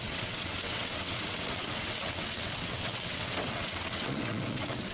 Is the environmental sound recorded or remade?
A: remade